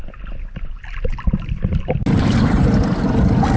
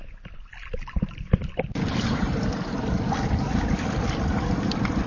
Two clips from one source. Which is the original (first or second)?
first